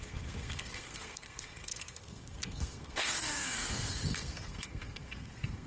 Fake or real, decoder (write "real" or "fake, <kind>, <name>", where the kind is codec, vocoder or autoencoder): fake, codec, SNAC